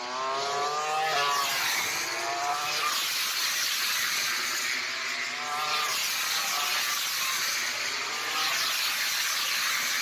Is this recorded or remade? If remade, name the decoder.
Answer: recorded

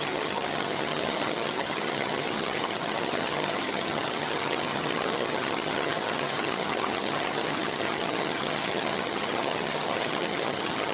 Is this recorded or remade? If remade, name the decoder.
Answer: remade, vocoder, HiFi-GAN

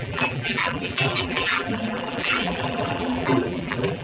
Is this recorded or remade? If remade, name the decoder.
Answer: remade, vocoder, BigVGAN v2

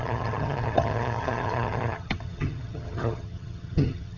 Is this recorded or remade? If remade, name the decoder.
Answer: remade, vocoder, HiFi-GAN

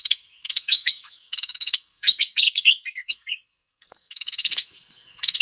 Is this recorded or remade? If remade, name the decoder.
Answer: remade, codec, SNAC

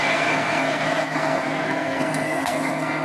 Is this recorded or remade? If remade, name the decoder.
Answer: remade, codec, SNAC